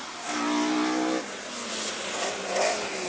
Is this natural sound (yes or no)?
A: yes